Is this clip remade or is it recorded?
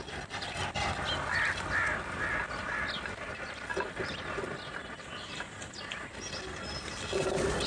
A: recorded